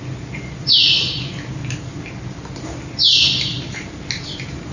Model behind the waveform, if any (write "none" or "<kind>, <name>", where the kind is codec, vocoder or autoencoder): none